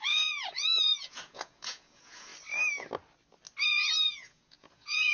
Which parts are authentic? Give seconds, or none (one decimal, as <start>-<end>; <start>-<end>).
2.3-3.7